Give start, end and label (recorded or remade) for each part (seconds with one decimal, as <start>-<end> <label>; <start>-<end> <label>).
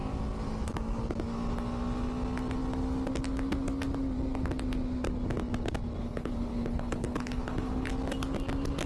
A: 0.0-6.0 recorded; 6.0-7.9 remade; 7.9-8.9 recorded